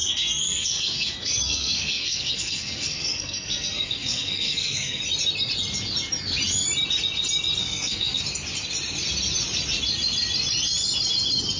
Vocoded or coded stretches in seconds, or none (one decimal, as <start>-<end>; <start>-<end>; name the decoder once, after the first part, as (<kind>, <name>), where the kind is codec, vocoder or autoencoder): 0.0-5.0 (codec, SNAC); 7.6-8.2